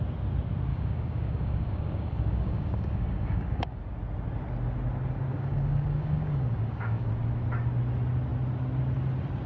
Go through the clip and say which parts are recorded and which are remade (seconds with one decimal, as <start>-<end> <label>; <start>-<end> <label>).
0.0-0.7 recorded; 0.7-3.8 remade; 3.8-5.3 recorded; 5.3-7.1 remade; 7.1-9.5 recorded